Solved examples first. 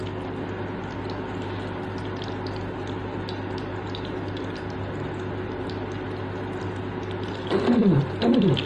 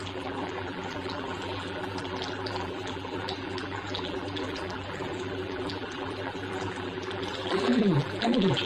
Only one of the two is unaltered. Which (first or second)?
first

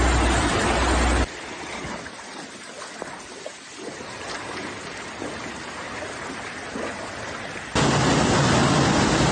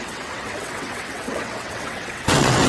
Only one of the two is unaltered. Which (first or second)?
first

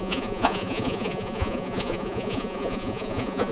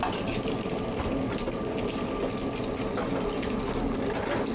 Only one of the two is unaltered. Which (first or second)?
second